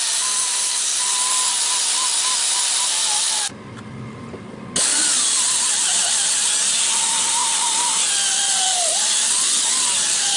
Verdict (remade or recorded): recorded